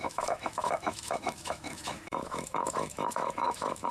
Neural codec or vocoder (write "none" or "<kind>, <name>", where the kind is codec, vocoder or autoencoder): autoencoder, DAC-VAE